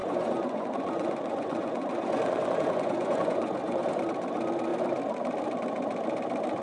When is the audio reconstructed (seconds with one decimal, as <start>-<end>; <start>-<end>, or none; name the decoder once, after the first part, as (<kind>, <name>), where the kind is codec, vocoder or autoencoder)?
0.0-4.0 (vocoder, Vocos)

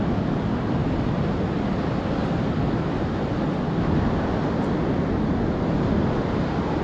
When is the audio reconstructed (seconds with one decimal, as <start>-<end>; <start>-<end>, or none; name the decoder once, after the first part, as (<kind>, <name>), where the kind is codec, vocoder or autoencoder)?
none

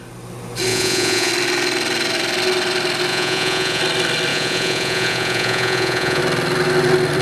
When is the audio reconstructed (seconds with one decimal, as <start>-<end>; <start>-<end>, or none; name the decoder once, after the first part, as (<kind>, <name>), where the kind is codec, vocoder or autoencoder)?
0.7-1.3 (vocoder, Vocos); 3.1-3.8; 4.3-6.2